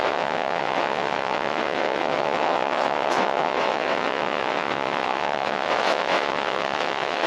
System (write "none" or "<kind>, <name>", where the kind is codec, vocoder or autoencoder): vocoder, WaveNeXt